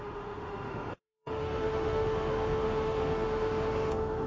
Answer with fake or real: fake